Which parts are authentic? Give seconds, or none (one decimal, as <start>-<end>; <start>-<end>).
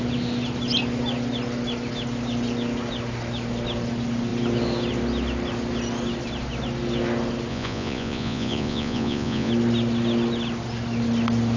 0.0-7.5; 9.5-11.6